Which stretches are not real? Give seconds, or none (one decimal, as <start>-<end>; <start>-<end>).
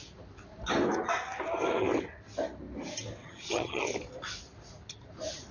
3.2-3.8